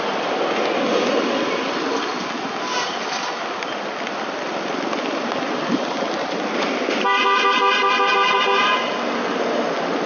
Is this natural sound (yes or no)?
yes